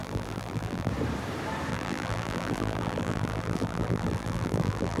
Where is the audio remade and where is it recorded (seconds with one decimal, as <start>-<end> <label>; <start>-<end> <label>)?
0.0-0.9 remade; 0.9-1.7 recorded; 1.7-5.0 remade